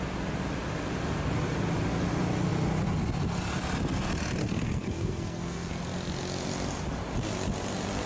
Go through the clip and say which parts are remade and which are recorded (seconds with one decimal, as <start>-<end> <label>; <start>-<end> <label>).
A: 0.0-4.4 recorded; 4.4-5.7 remade; 5.7-8.1 recorded